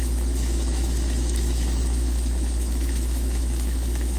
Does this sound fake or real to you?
fake